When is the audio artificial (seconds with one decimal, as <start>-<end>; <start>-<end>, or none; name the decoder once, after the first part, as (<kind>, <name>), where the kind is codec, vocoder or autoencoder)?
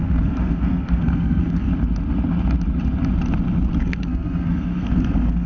0.0-1.7 (codec, SNAC); 3.8-5.5